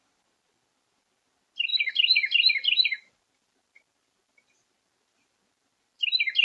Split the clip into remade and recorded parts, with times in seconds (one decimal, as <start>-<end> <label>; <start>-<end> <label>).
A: 0.0-1.7 recorded; 1.7-2.5 remade; 2.5-6.4 recorded

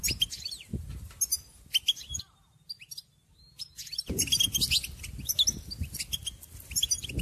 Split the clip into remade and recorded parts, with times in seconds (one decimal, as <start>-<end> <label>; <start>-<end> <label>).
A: 0.0-7.2 recorded

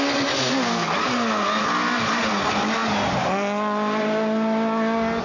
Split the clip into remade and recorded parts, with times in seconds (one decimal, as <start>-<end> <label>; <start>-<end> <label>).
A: 0.0-5.2 recorded

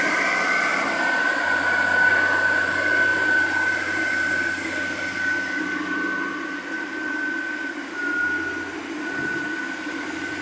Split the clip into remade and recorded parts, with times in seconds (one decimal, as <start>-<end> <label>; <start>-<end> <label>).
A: 0.0-10.4 remade

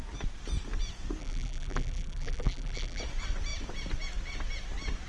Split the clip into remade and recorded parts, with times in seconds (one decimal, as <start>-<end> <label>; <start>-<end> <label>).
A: 0.0-1.2 recorded; 1.2-3.0 remade; 3.0-5.1 recorded